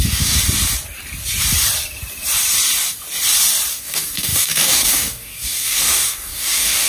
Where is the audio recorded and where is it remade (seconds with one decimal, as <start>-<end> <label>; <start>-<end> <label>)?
0.0-0.4 remade; 0.4-3.7 recorded; 3.7-6.9 remade